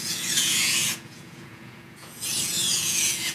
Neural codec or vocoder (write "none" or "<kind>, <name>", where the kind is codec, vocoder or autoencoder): vocoder, Vocos